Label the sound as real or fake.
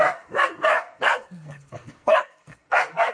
fake